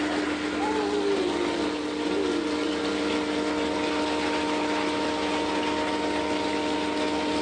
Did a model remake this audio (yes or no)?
no